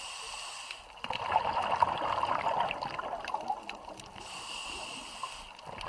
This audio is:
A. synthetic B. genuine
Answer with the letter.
B